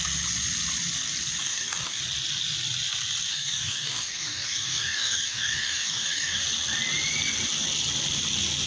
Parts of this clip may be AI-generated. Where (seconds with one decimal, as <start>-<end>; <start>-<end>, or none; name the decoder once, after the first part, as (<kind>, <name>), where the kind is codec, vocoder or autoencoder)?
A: 1.4-2.0 (codec, DAC); 3.3-6.4